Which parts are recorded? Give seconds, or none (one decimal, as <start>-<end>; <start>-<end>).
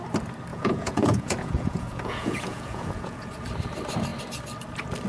0.0-0.5; 3.3-5.1